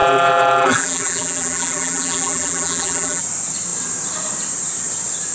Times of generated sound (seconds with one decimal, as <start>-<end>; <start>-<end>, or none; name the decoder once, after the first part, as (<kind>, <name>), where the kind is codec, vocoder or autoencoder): 0.0-3.2 (vocoder, BigVGAN v2)